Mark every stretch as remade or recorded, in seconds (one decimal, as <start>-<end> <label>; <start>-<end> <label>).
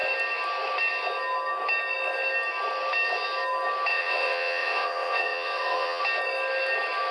0.0-3.9 recorded; 3.9-6.0 remade; 6.0-7.1 recorded